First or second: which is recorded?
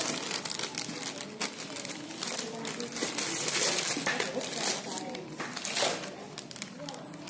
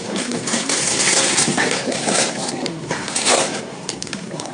first